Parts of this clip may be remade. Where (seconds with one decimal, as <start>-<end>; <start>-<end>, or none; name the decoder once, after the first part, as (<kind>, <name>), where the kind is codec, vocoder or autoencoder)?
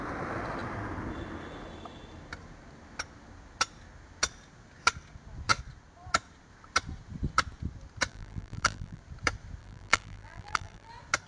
8.1-9.0 (vocoder, BigVGAN v2); 9.6-10.9